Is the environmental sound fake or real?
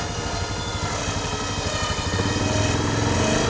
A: real